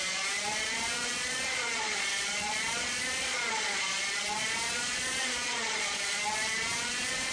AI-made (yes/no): yes